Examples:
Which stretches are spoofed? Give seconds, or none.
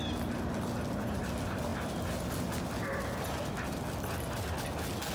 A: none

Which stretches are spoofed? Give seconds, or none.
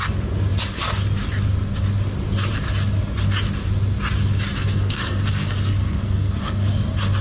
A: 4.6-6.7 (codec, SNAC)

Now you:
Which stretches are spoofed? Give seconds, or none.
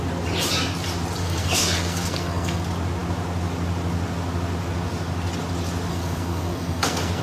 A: 1.2-2.6 (codec, SNAC); 5.9-7.2